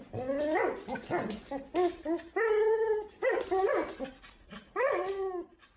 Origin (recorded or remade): recorded